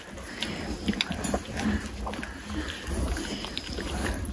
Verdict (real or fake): real